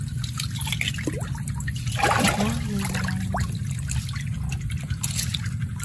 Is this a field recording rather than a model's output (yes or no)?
yes